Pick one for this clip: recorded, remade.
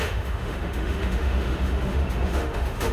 remade